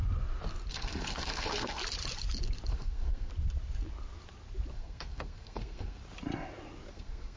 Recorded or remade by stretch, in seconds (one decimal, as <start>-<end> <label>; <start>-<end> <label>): 0.0-0.7 recorded; 0.7-1.8 remade; 1.8-2.7 recorded; 2.7-3.3 remade; 3.3-4.7 recorded; 4.7-6.0 remade; 6.0-6.9 recorded; 6.9-7.4 remade